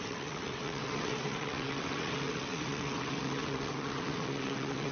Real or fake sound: fake